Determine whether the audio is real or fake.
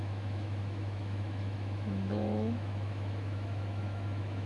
fake